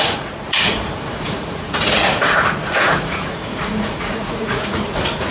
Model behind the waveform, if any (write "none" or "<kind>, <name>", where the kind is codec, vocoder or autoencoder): vocoder, Vocos